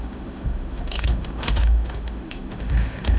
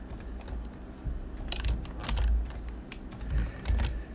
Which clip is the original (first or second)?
second